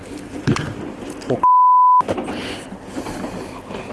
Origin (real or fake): real